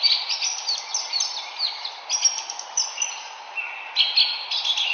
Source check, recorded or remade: recorded